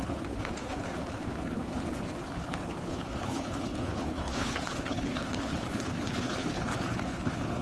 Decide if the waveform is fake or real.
fake